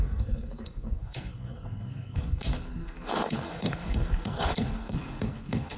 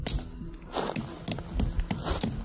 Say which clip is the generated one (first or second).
first